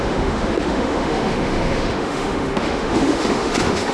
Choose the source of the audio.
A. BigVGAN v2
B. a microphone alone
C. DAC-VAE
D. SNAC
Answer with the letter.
C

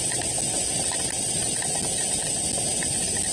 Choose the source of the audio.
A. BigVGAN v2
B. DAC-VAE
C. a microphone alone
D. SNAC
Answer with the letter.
C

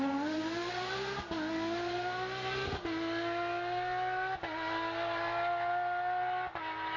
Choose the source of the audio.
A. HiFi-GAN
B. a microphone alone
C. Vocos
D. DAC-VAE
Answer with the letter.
B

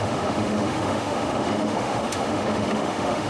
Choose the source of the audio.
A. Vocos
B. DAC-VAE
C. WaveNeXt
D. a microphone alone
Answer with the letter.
B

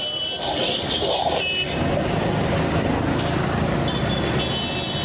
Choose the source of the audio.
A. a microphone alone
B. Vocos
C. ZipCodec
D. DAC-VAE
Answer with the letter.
A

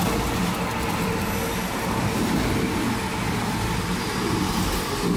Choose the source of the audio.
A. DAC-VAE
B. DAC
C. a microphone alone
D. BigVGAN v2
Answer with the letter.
C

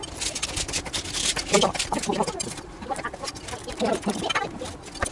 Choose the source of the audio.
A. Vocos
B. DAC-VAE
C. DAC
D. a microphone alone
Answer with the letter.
D